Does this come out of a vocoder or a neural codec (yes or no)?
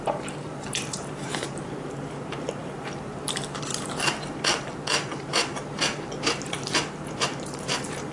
yes